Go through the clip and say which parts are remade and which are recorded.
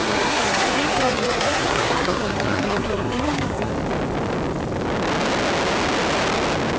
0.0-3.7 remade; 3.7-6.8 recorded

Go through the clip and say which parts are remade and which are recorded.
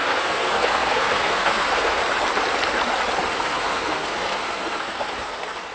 0.0-2.0 remade; 2.0-3.3 recorded; 3.3-5.7 remade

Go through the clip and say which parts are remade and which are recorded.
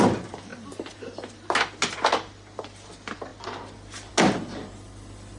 0.0-5.4 recorded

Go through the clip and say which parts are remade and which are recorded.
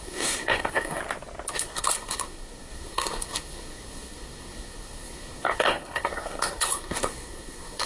0.0-1.0 remade; 1.0-1.5 recorded; 1.5-7.9 remade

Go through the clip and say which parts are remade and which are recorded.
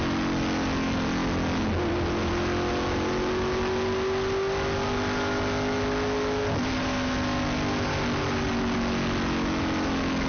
0.0-10.3 recorded